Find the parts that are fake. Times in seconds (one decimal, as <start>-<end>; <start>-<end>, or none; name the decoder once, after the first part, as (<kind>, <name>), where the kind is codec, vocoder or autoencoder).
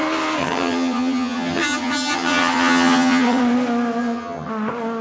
0.4-3.4 (vocoder, HiFi-GAN); 4.0-4.5